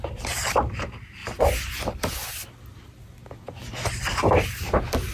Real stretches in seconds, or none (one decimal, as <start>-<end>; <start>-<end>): 0.0-5.1